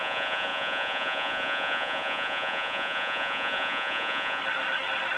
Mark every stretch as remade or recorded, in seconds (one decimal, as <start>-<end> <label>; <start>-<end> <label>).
0.0-4.4 remade; 4.4-5.2 recorded